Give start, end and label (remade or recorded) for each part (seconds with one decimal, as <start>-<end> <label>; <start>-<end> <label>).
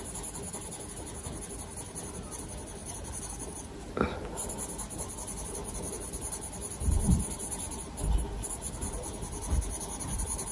0.0-10.5 recorded